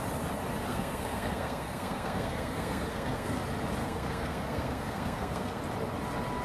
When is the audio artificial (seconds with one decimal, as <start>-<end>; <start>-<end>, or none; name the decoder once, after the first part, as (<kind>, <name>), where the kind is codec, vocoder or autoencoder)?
0.7-3.4 (codec, SNAC); 3.8-5.6